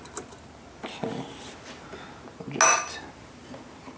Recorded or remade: recorded